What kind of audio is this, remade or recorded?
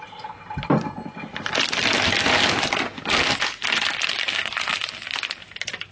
recorded